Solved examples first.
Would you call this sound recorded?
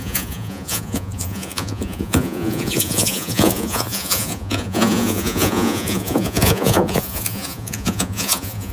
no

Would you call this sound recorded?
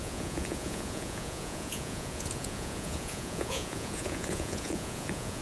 no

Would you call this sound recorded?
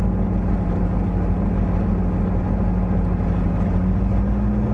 yes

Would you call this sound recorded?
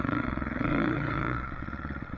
no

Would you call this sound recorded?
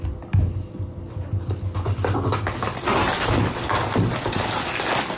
yes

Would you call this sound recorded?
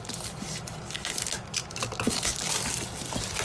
yes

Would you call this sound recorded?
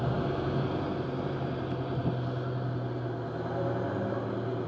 yes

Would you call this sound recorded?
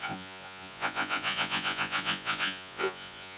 no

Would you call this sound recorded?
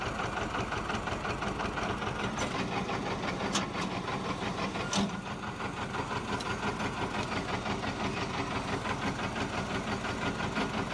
yes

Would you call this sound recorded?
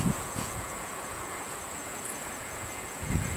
no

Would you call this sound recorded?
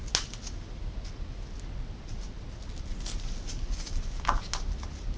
yes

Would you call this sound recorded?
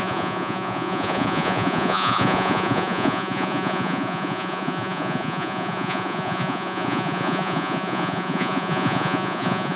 no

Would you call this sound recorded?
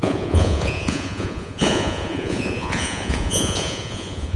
no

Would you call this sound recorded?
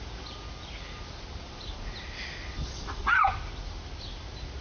yes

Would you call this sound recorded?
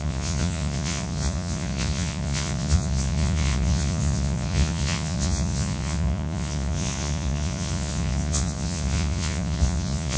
no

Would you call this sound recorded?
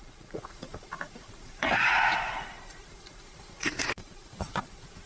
no